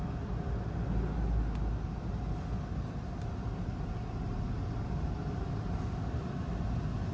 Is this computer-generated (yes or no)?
no